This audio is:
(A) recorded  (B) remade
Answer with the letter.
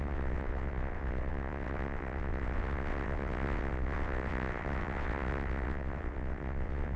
B